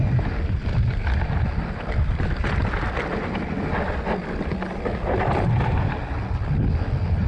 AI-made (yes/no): no